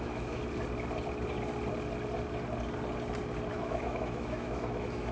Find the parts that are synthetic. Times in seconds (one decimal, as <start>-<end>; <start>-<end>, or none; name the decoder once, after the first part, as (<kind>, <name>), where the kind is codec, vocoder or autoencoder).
0.0-0.4 (autoencoder, DAC-VAE); 3.5-5.1